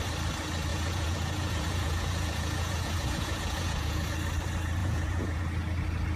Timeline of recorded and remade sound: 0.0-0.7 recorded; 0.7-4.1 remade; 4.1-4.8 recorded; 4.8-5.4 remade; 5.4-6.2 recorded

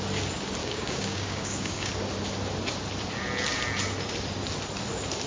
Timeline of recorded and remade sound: 0.0-0.6 recorded; 0.6-1.9 remade; 1.9-5.3 recorded